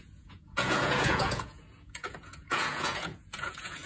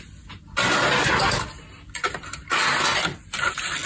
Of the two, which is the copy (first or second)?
first